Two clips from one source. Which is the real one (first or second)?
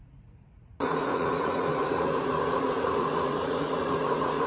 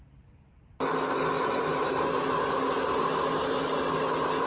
second